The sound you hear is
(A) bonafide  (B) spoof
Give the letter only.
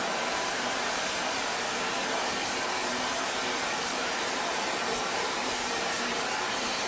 B